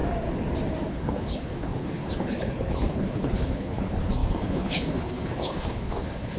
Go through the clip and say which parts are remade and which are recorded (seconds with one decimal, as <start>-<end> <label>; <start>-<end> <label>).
0.0-0.9 recorded; 0.9-6.4 remade